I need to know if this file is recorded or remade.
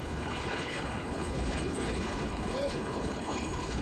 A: remade